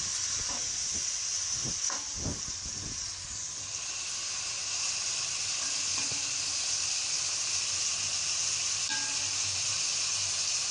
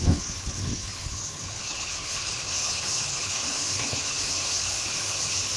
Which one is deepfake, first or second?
second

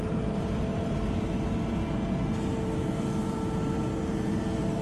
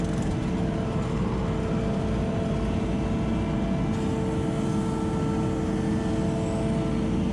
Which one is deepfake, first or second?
first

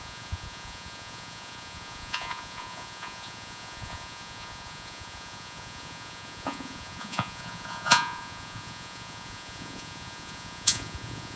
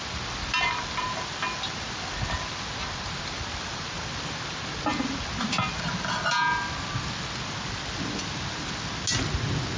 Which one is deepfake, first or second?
first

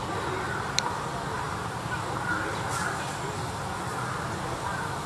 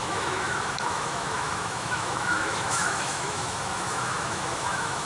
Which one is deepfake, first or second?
second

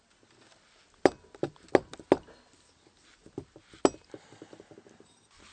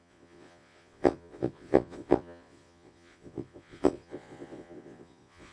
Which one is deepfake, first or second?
second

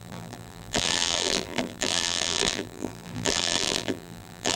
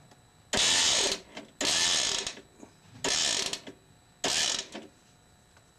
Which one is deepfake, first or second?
first